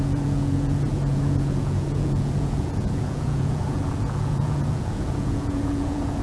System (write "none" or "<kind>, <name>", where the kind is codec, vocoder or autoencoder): vocoder, Vocos